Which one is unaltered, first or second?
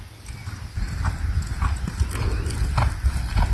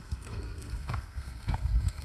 first